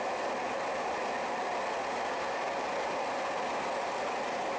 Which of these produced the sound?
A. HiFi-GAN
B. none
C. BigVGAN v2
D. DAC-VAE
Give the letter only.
B